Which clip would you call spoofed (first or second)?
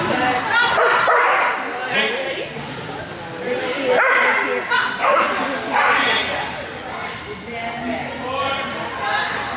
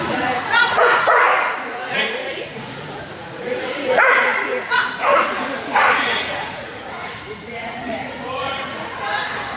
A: second